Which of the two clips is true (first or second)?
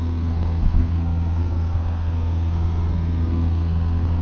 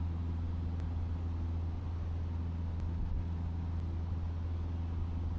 second